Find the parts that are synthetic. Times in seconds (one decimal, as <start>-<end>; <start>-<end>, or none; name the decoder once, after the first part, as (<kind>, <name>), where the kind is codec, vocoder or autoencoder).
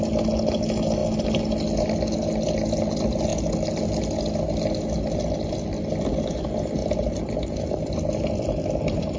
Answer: none